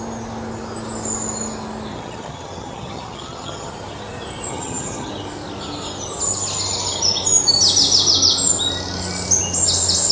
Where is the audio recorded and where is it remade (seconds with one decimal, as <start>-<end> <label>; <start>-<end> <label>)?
0.0-1.9 recorded; 1.9-3.7 remade; 3.7-4.5 recorded; 4.5-5.1 remade; 5.1-10.1 recorded